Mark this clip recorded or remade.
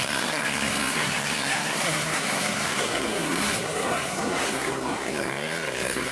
remade